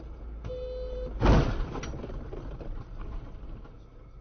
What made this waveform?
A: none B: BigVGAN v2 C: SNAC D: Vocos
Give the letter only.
A